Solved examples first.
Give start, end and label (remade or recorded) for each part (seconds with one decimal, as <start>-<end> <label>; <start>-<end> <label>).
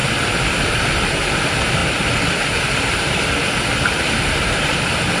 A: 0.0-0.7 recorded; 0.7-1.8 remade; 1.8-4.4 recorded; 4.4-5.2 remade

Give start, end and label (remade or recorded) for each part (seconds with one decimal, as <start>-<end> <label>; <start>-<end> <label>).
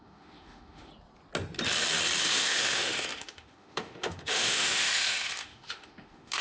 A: 0.0-0.9 remade; 0.9-2.2 recorded; 2.2-6.4 remade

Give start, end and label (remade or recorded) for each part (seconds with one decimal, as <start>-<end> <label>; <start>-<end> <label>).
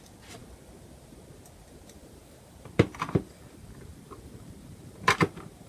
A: 0.0-2.2 recorded; 2.2-5.7 remade